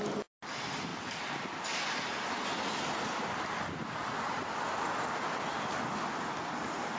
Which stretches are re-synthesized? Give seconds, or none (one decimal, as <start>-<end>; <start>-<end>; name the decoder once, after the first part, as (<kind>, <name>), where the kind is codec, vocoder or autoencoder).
none